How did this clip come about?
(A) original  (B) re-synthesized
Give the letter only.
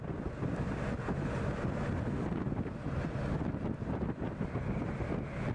A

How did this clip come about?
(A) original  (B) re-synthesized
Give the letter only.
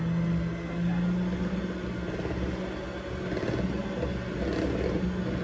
A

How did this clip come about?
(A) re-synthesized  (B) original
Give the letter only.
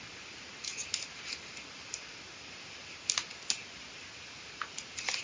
B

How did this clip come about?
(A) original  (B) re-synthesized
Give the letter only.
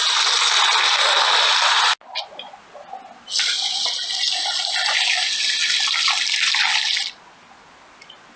A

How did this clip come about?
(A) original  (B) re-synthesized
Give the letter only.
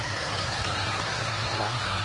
B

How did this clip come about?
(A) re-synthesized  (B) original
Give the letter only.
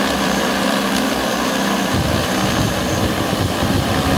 A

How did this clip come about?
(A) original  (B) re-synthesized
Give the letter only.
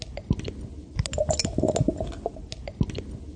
A